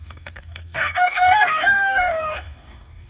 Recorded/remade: remade